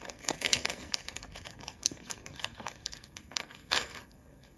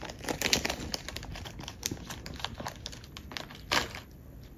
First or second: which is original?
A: second